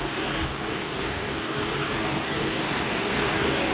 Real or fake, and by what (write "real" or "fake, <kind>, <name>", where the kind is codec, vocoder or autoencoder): fake, codec, DAC